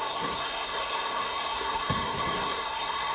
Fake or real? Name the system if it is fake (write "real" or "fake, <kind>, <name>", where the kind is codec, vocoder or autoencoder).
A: fake, codec, SNAC